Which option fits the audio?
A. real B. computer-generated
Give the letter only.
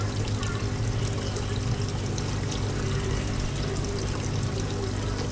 A